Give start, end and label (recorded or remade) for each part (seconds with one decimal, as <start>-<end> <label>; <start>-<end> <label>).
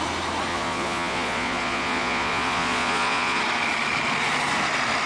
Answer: 0.0-0.5 recorded; 0.5-3.4 remade; 3.4-5.1 recorded